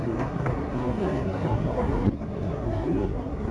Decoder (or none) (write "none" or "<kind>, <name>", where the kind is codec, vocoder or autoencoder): codec, SNAC